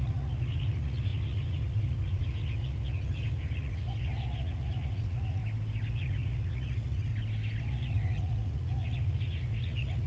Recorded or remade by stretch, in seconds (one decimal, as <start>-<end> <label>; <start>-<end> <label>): 0.0-5.4 remade; 5.4-5.9 recorded; 5.9-7.1 remade; 7.1-7.6 recorded; 7.6-10.1 remade